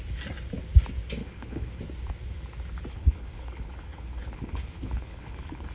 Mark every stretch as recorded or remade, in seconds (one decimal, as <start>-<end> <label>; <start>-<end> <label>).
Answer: 0.0-1.2 recorded; 1.2-1.8 remade; 1.8-2.9 recorded; 2.9-5.7 remade